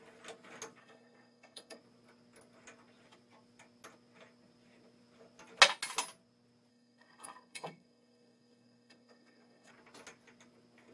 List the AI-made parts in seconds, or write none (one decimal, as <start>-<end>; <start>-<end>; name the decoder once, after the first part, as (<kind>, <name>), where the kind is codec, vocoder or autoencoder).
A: 0.8-1.8 (codec, SNAC); 6.7-9.7